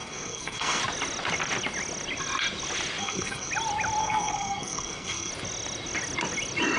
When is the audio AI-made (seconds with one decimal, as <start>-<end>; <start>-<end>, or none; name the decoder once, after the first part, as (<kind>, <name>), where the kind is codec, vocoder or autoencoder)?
0.0-0.8 (codec, SNAC); 3.0-3.5; 4.0-5.3